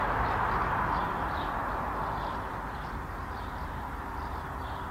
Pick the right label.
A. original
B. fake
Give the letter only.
B